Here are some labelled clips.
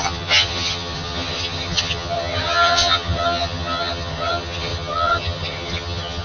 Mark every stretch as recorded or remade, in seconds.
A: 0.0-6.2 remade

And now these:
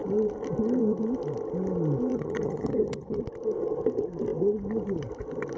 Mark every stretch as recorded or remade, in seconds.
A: 0.0-2.1 recorded; 2.1-3.2 remade; 3.2-5.6 recorded

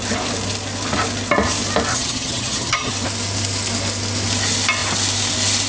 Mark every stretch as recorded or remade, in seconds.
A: 0.0-1.9 recorded; 1.9-2.9 remade; 2.9-5.7 recorded

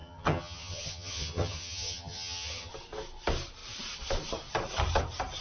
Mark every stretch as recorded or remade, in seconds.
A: 0.0-2.7 remade; 2.7-5.4 recorded

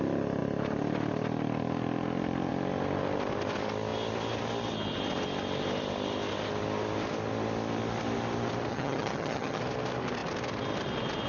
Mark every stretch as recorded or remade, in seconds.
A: 0.0-8.7 recorded; 8.7-9.6 remade; 9.6-11.3 recorded

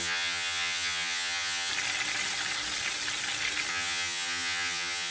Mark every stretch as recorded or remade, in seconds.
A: 0.0-1.7 remade; 1.7-3.7 recorded; 3.7-5.1 remade